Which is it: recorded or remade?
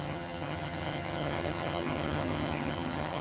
remade